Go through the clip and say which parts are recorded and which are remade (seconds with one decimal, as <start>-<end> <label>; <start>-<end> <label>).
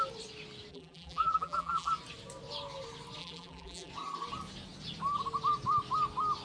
0.0-0.7 recorded; 0.7-1.9 remade; 1.9-3.2 recorded; 3.2-3.9 remade; 3.9-6.4 recorded